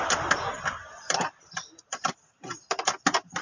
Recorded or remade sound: remade